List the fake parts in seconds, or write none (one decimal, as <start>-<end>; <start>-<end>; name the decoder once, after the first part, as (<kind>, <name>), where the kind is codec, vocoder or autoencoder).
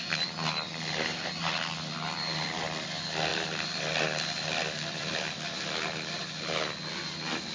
3.3-6.1 (vocoder, BigVGAN v2)